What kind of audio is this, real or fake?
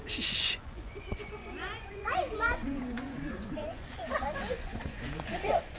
fake